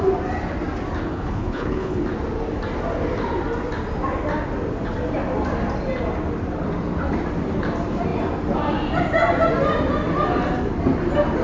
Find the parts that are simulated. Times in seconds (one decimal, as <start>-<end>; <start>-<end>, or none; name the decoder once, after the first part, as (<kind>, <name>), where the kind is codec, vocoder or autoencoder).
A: 1.1-2.0 (codec, HILCodec)